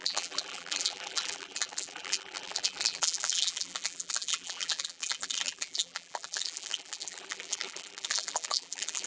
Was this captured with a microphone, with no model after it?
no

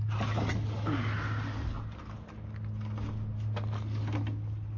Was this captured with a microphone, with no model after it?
yes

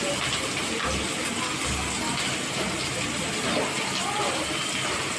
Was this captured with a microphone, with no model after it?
yes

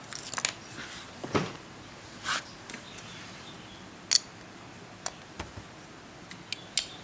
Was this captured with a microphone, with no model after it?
yes